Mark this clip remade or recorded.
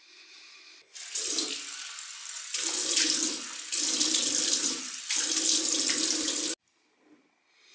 recorded